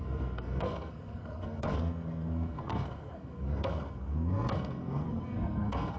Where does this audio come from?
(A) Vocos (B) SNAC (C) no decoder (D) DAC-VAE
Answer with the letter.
B